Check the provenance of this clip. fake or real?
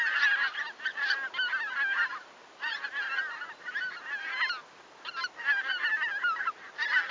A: real